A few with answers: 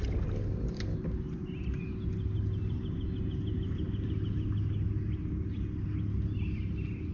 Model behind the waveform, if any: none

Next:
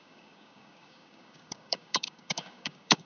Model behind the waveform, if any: codec, DAC